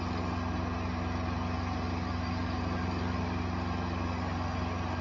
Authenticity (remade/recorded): recorded